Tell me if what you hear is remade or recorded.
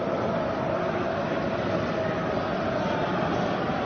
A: recorded